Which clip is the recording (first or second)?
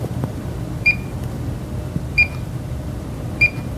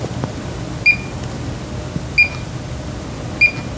second